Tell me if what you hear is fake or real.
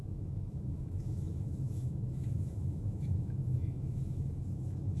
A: fake